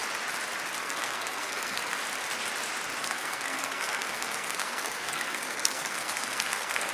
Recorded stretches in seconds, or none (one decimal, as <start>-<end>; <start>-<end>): 0.0-0.8; 2.0-3.0